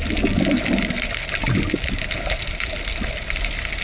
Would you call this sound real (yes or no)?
yes